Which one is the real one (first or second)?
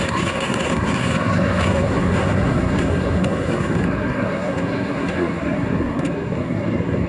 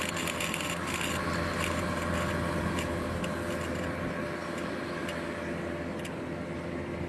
second